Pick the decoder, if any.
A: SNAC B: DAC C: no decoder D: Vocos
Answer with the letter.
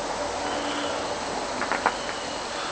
C